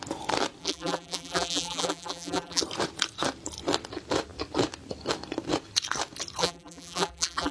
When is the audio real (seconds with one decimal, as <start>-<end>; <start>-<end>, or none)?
0.0-0.6; 2.6-6.4